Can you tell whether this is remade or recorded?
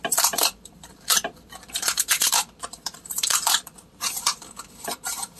remade